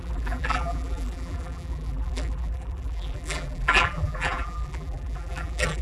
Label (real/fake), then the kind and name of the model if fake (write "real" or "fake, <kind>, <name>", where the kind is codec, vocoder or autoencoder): fake, vocoder, BigVGAN v2